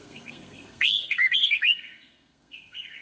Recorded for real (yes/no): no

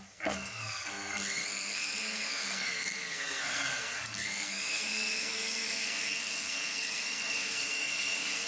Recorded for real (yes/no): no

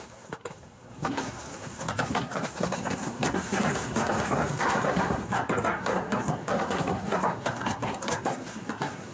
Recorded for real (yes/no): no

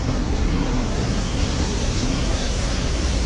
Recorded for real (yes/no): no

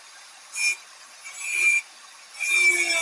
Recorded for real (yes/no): yes